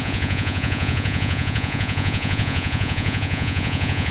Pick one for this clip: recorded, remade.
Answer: remade